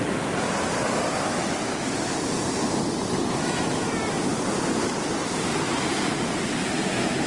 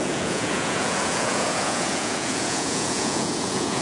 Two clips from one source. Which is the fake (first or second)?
second